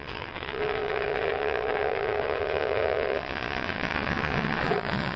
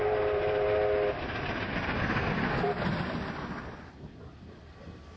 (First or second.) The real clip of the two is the second